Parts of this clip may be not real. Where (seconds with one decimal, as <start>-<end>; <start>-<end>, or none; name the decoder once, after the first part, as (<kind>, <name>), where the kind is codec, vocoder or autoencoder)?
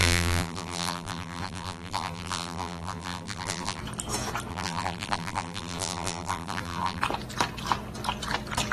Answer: 0.0-3.8 (vocoder, BigVGAN v2); 4.5-7.0